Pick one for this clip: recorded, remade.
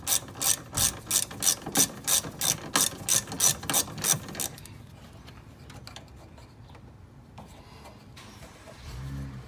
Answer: recorded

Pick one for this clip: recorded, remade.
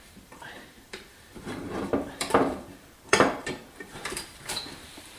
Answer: remade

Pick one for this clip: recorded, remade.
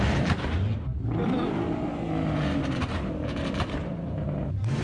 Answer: recorded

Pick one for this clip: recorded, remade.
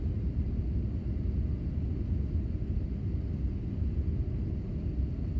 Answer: recorded